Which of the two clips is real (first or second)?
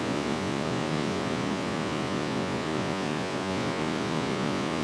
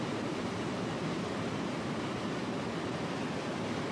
second